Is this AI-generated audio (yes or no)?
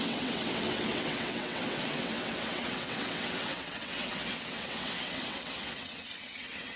yes